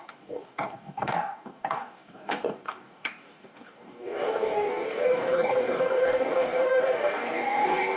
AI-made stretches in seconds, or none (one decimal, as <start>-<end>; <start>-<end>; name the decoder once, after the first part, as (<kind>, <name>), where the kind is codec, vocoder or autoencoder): 0.0-8.0 (codec, DAC)